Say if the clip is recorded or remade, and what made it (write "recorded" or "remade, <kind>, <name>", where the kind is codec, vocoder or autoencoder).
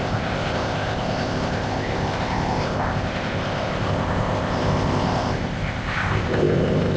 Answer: remade, codec, ZipCodec